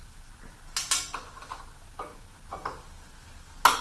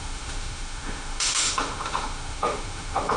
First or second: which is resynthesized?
second